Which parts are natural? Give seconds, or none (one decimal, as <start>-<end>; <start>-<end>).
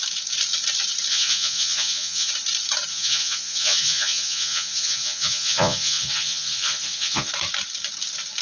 0.0-1.1; 2.3-2.9; 7.3-8.4